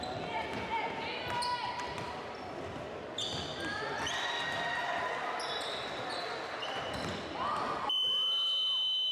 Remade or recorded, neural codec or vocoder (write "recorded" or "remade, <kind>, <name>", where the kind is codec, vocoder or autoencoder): recorded